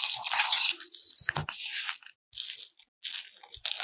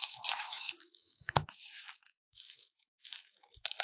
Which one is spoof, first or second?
second